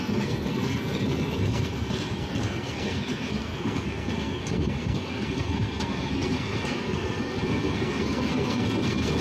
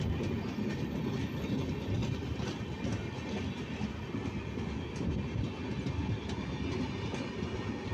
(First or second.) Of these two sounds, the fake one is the first